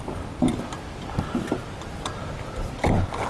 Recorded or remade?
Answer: recorded